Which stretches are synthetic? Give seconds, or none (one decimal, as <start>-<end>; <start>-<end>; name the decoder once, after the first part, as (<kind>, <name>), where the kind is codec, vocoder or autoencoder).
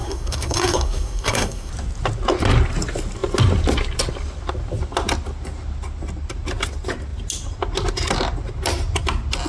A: 0.0-1.7 (codec, SNAC)